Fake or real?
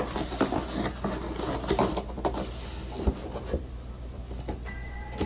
real